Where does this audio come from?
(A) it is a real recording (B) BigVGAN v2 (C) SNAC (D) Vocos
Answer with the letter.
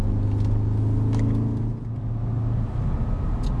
A